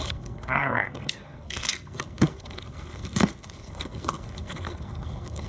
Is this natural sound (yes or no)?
no